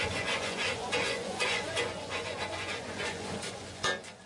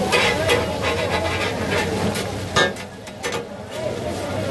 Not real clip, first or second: first